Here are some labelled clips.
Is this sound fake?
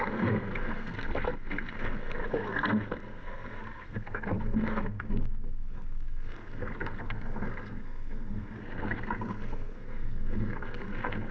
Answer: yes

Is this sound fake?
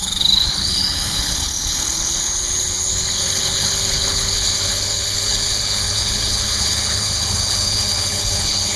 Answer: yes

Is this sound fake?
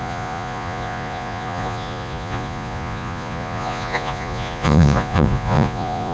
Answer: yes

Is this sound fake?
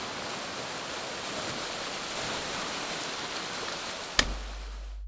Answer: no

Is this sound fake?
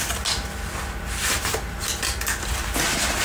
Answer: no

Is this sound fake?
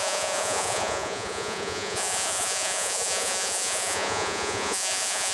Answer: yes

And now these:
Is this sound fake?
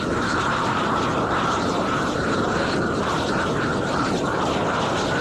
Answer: yes